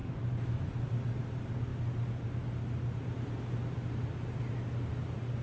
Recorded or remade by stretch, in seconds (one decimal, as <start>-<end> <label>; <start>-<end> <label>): 0.0-0.6 remade; 0.6-5.4 recorded